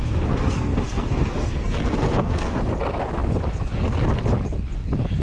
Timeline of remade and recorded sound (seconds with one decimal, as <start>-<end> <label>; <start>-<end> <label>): 0.0-2.6 remade; 2.6-5.2 recorded